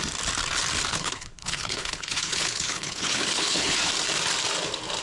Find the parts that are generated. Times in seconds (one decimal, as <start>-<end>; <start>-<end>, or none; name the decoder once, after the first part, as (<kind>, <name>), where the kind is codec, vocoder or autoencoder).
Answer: 0.9-3.9 (codec, HILCodec)